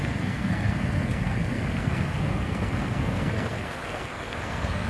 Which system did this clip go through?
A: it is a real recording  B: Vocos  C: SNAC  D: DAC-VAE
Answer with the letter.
C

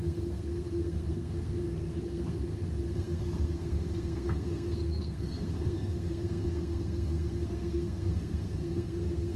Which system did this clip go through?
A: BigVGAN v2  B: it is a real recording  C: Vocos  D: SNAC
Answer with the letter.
D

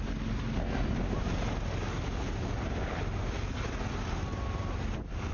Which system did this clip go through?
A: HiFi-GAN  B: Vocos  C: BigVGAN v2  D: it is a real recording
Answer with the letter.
D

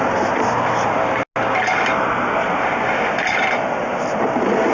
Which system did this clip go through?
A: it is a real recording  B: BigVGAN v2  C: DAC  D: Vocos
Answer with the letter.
A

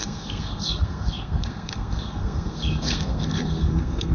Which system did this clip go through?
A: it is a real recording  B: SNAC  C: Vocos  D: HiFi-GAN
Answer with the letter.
B